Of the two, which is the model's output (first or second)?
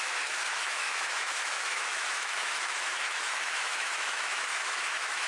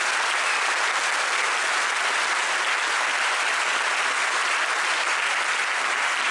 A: first